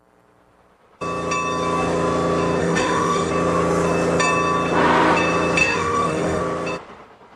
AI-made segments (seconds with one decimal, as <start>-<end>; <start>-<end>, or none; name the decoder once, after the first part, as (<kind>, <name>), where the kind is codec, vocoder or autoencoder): 2.6-3.3 (autoencoder, DAC-VAE); 5.6-6.4